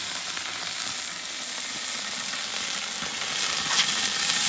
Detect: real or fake real